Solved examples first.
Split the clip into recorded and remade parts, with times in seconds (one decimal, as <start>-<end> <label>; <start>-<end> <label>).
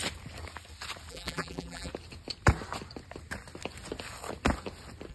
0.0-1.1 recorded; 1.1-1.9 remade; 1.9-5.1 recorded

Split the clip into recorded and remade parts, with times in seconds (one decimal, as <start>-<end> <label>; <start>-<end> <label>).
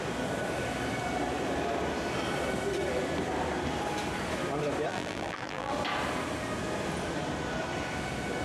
0.0-4.9 recorded; 4.9-5.7 remade; 5.7-8.4 recorded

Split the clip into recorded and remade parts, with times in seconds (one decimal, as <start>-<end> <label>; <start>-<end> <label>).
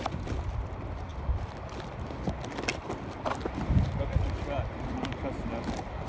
0.0-1.1 recorded; 1.1-2.2 remade; 2.2-2.7 recorded; 2.7-4.0 remade; 4.0-6.1 recorded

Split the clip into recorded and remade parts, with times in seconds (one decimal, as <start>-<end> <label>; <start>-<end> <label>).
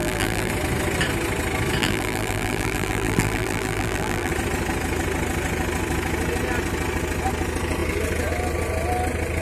0.0-0.5 remade; 0.5-1.8 recorded; 1.8-4.3 remade; 4.3-9.4 recorded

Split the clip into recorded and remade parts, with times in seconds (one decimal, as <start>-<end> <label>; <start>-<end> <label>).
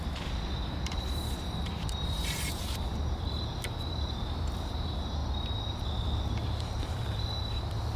0.0-5.2 remade; 5.2-6.6 recorded; 6.6-8.0 remade